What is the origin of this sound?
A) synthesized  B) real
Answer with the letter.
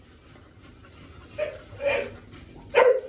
B